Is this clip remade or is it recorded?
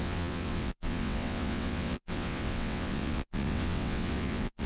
remade